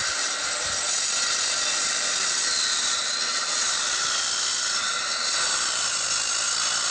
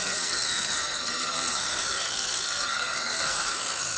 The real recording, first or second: first